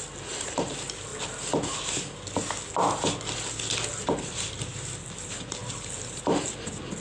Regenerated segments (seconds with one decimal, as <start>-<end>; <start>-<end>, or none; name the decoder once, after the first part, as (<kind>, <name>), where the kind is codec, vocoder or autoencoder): none